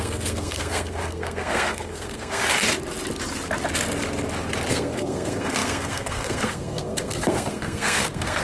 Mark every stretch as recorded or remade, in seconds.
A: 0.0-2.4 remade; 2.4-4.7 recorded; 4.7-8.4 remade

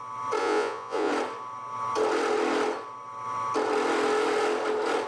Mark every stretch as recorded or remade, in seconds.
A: 0.0-0.4 recorded; 0.4-1.1 remade; 1.1-5.1 recorded

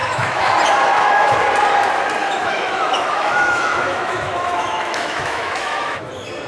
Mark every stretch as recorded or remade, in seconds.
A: 0.0-0.5 remade; 0.5-0.9 recorded; 0.9-1.4 remade; 1.4-2.2 recorded; 2.2-6.1 remade; 6.1-6.5 recorded

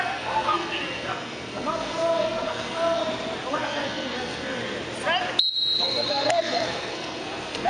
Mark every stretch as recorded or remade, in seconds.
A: 0.0-3.0 remade; 3.0-3.5 recorded; 3.5-4.6 remade; 4.6-5.8 recorded; 5.8-7.7 remade

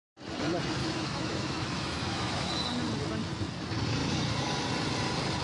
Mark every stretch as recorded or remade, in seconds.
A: 0.0-0.8 recorded; 0.8-2.5 remade; 2.5-5.4 recorded

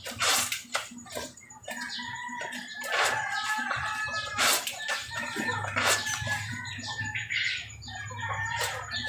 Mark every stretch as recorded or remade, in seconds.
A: 0.0-2.6 remade; 2.6-4.3 recorded; 4.3-9.1 remade

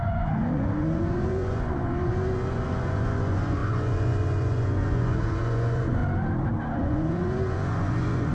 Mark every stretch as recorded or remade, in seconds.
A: 0.0-6.0 remade; 6.0-6.7 recorded; 6.7-8.3 remade